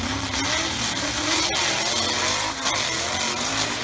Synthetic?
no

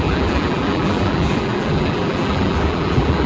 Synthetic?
yes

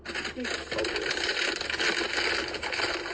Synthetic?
no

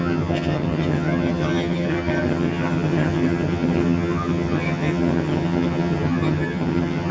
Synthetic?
yes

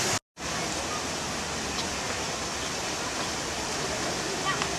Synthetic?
no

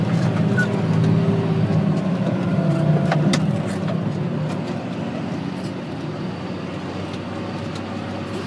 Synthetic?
no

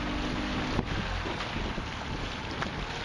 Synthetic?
no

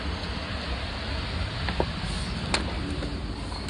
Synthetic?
no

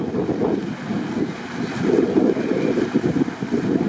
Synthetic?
no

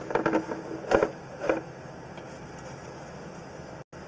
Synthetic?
no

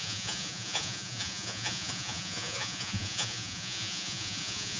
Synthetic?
yes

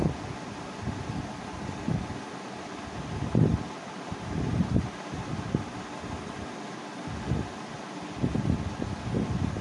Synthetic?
no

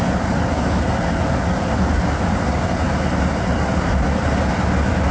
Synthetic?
no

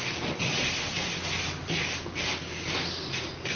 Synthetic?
no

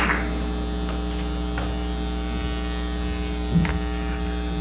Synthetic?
no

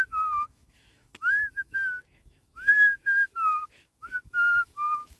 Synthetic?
yes